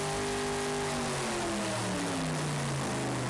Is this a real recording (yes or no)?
yes